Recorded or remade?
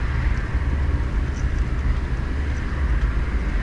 recorded